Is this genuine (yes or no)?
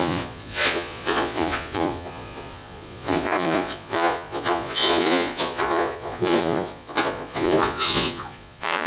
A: no